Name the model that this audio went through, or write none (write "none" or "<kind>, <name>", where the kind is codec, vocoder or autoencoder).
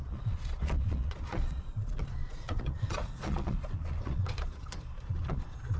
vocoder, Vocos